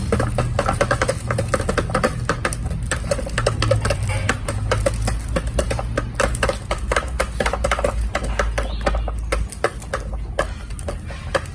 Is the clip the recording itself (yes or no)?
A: yes